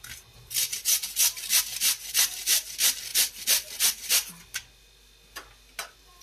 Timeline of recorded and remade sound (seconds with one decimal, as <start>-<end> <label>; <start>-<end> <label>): 0.0-6.2 recorded